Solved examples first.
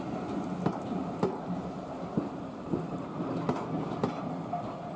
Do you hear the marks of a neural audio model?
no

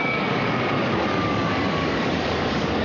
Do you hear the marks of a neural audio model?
yes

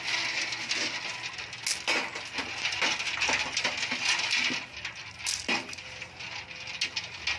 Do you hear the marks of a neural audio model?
no